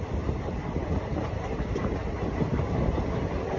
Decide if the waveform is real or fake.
real